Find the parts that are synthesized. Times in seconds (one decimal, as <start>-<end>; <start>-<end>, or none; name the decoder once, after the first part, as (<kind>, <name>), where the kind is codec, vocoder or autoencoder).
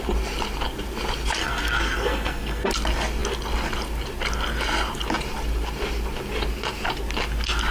1.4-2.7 (codec, SNAC)